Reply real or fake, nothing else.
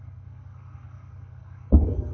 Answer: fake